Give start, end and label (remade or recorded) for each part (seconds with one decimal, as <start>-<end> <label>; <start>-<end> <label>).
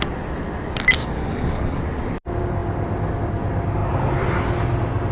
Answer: 0.0-1.0 recorded; 1.0-1.8 remade; 1.8-5.1 recorded